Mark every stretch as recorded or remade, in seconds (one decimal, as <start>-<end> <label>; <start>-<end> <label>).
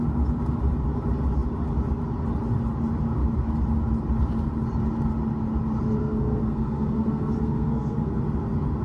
0.0-6.0 recorded; 6.0-8.2 remade; 8.2-8.8 recorded